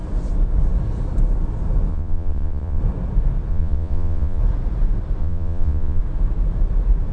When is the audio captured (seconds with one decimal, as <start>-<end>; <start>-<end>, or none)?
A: 0.0-1.9; 2.8-3.5; 4.4-5.2; 6.0-7.1